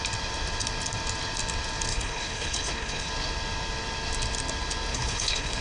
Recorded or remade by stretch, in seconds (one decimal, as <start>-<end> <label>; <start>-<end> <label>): 0.0-1.9 recorded; 1.9-3.1 remade; 3.1-4.9 recorded; 4.9-5.6 remade